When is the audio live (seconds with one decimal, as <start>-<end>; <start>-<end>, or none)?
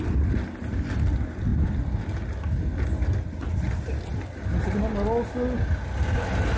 0.0-6.6